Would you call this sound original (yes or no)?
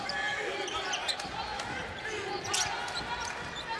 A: yes